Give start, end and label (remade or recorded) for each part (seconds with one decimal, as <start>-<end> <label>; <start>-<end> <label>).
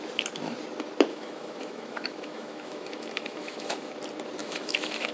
0.0-1.1 recorded; 1.1-3.9 remade; 3.9-4.4 recorded; 4.4-5.1 remade